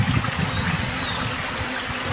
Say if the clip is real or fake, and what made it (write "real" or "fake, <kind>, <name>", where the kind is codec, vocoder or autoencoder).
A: real